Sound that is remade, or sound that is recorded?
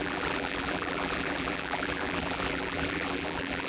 remade